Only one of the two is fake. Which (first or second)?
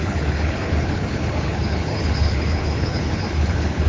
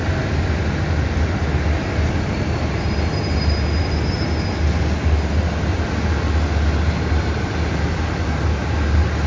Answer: first